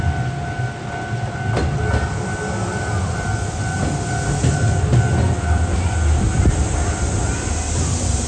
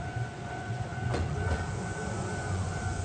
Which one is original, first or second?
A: first